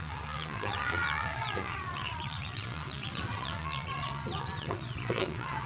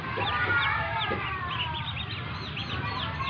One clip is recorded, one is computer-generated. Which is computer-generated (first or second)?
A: first